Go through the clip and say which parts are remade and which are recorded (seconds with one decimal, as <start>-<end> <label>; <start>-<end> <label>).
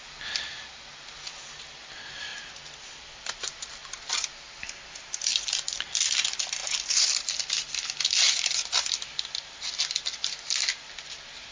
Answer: 0.0-2.3 recorded; 2.3-5.5 remade; 5.5-6.6 recorded; 6.6-7.3 remade; 7.3-11.5 recorded